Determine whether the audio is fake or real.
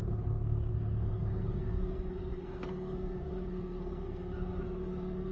fake